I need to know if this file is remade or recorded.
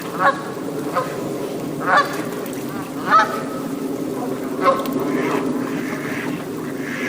recorded